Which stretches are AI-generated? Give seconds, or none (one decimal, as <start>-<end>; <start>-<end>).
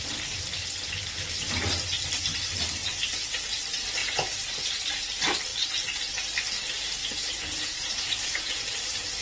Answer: 4.0-4.7; 7.0-8.6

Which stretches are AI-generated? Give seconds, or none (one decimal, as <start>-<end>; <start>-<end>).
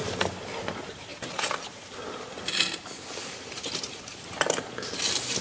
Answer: none